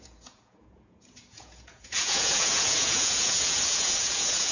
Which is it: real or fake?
fake